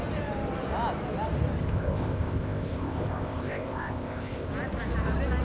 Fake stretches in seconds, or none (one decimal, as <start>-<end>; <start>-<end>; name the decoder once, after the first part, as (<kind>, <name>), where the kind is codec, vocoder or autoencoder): 1.6-4.5 (codec, ZipCodec)